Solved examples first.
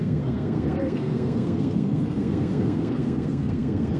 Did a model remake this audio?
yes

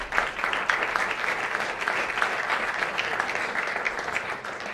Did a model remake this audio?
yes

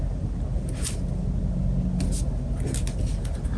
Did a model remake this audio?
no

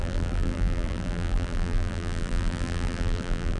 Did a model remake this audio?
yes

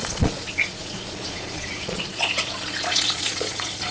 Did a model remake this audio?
yes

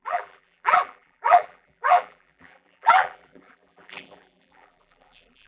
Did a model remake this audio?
yes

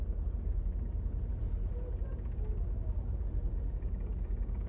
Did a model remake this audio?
no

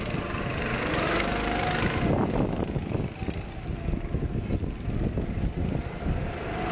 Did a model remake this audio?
no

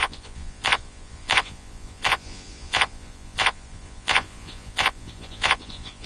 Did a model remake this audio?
yes